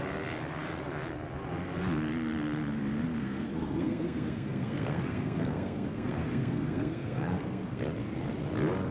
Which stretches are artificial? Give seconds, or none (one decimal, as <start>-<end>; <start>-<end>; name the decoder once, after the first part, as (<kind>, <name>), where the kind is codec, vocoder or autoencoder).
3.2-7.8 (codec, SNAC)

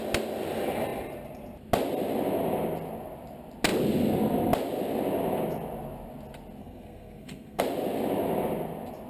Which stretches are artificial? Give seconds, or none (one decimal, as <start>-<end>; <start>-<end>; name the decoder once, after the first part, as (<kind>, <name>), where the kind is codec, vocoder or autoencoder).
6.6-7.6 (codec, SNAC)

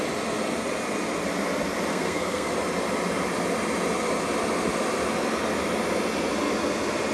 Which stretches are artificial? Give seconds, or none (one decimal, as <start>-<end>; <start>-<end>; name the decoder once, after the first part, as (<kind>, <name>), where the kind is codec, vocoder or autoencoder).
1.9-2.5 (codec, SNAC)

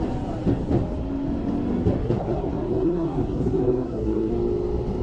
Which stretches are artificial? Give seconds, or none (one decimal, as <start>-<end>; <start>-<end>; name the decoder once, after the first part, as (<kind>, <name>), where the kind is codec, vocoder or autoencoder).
2.0-4.3 (codec, SNAC)